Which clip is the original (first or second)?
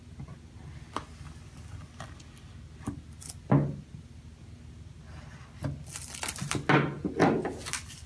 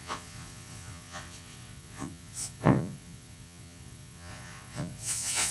first